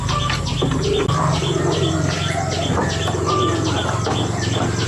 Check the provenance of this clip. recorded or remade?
recorded